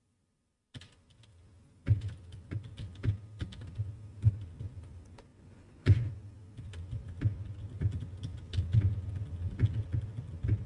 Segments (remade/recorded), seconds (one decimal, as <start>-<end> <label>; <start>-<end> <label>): 0.0-5.3 recorded; 5.3-6.1 remade; 6.1-10.7 recorded